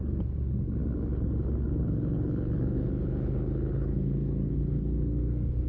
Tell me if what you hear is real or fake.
fake